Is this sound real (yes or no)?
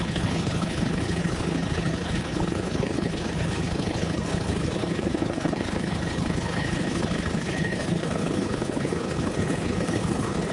no